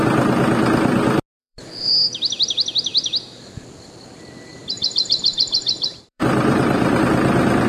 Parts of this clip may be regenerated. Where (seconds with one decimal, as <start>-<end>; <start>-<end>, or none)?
1.4-1.9; 4.5-7.0